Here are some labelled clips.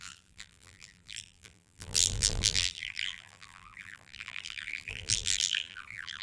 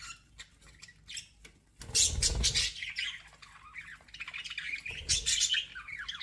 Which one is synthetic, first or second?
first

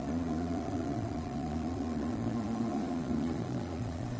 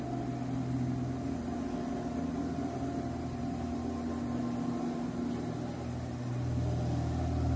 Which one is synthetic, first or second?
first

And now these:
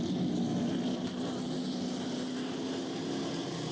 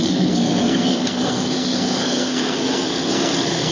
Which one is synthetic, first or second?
second